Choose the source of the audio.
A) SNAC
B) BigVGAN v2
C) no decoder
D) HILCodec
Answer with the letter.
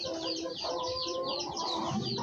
C